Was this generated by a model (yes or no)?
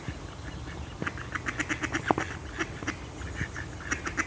no